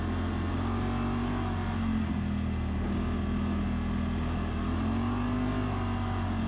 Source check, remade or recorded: recorded